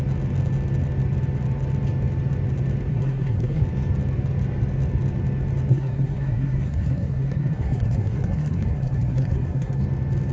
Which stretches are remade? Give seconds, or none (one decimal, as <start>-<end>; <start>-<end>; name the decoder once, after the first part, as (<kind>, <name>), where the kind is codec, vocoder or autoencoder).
2.9-3.6 (codec, SNAC); 5.7-9.8